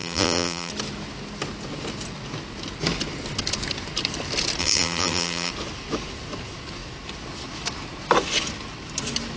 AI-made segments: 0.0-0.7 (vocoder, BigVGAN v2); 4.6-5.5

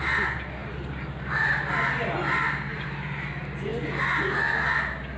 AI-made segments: 0.6-1.5 (vocoder, BigVGAN v2); 2.7-3.3

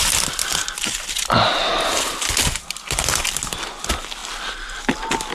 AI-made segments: none